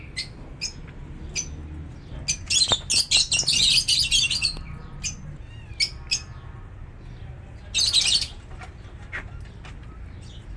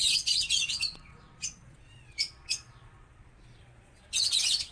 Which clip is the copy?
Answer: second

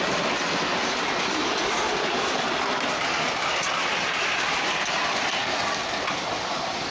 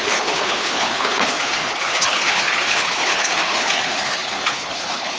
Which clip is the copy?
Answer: second